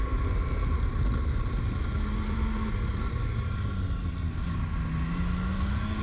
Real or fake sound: real